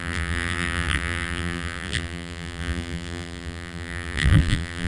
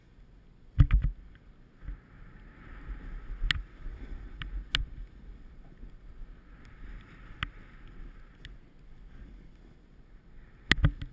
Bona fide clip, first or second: second